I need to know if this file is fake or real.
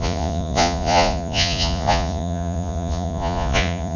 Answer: fake